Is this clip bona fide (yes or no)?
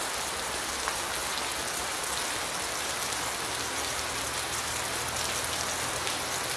yes